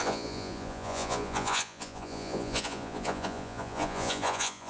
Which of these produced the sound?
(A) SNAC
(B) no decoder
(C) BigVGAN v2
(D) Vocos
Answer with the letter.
D